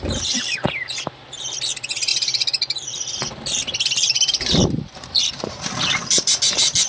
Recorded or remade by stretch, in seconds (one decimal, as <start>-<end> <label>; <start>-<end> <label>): 0.0-2.1 recorded; 2.1-5.2 remade; 5.2-6.9 recorded